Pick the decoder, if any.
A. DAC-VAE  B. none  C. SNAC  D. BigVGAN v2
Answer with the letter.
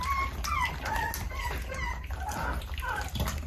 B